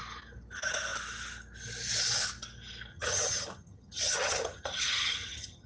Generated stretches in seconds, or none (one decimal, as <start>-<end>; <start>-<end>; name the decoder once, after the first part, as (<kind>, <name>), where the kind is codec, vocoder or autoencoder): 2.9-5.7 (vocoder, HiFi-GAN)